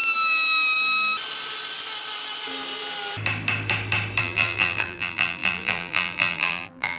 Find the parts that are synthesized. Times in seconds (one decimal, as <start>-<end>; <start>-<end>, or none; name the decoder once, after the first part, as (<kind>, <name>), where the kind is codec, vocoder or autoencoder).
4.2-7.0 (vocoder, BigVGAN v2)